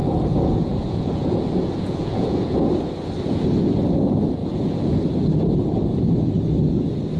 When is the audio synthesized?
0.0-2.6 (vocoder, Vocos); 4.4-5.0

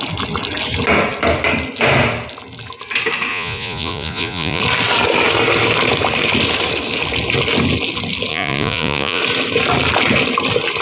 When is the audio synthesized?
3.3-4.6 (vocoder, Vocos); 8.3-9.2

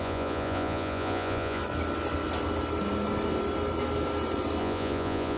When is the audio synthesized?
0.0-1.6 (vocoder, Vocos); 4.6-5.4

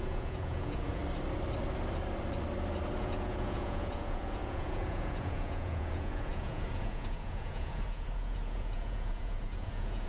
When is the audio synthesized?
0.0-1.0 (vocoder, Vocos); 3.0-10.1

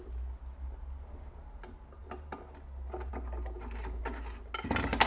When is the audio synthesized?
none